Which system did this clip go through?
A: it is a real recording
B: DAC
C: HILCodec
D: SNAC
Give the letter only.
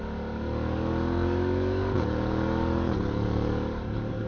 B